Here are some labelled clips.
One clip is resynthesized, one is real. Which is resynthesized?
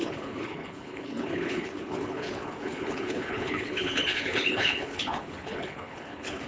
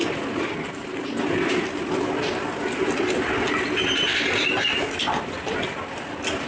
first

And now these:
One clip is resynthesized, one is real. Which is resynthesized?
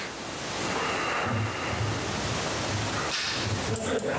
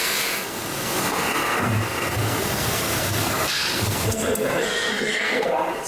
second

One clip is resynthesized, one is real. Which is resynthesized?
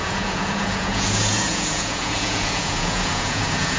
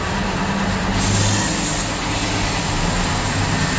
first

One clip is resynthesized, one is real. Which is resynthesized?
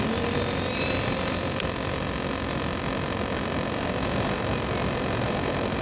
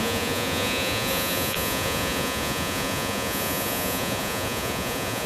second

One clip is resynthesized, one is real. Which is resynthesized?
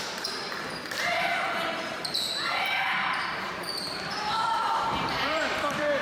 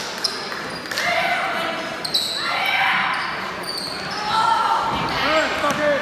first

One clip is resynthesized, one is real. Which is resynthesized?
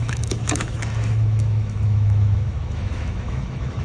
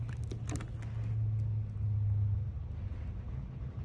first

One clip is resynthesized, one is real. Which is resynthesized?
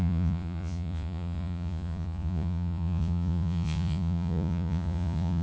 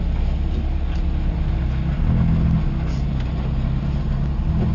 first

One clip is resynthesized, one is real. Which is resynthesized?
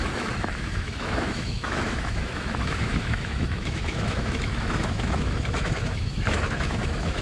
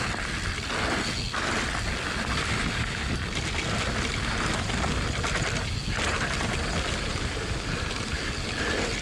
first